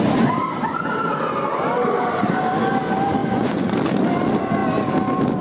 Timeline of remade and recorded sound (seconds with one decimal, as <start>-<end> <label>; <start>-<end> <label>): 0.0-3.2 recorded; 3.2-3.7 remade; 3.7-5.4 recorded